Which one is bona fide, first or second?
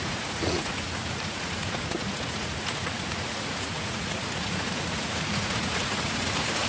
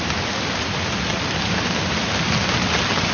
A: second